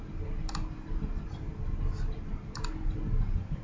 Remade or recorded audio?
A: recorded